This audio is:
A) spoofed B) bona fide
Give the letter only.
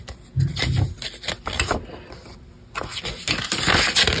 B